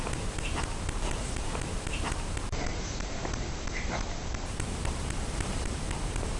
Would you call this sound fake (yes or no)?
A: yes